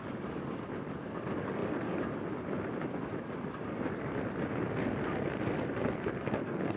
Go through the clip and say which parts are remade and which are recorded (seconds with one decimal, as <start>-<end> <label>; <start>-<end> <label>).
0.0-5.8 recorded; 5.8-6.8 remade